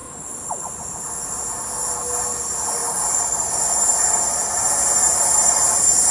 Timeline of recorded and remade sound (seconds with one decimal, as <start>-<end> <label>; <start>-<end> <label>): 0.0-6.1 recorded